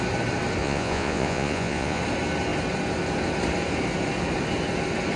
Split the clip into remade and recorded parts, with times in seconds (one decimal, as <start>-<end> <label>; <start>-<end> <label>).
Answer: 0.0-0.6 recorded; 0.6-2.0 remade; 2.0-5.2 recorded